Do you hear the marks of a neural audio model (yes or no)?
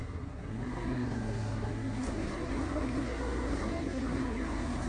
yes